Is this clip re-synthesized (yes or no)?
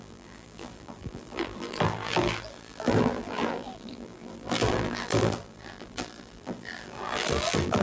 yes